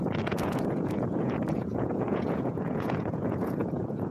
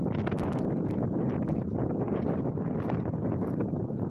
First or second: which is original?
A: second